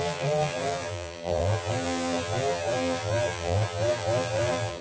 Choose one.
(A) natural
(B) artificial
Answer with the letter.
B